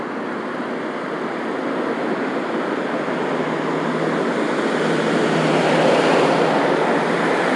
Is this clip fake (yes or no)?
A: no